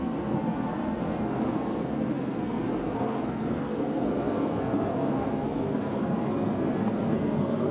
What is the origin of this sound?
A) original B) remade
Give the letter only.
B